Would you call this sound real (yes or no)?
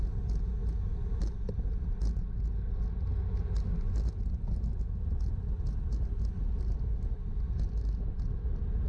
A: yes